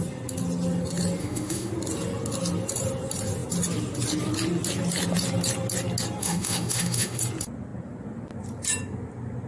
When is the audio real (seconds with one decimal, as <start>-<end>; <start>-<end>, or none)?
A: 0.0-1.2; 1.7-6.2; 7.2-9.5